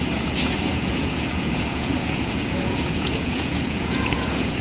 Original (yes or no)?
no